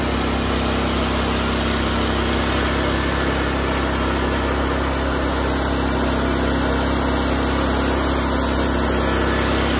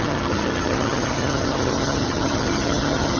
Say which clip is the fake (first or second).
second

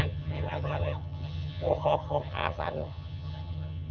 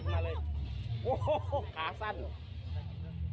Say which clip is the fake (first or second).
first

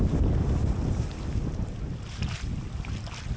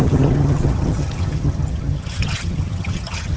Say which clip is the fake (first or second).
second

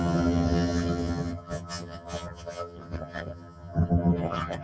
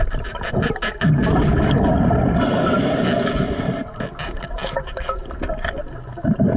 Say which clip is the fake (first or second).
first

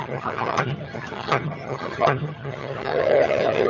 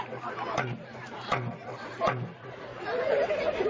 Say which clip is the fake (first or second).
first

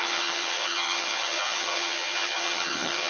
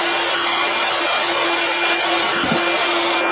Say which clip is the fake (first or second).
first